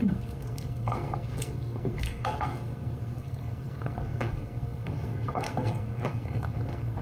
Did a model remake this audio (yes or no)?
yes